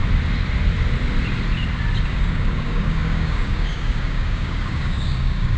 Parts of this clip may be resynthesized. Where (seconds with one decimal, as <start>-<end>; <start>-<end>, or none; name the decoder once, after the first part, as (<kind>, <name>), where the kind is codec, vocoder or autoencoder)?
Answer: 2.1-5.6 (codec, DAC)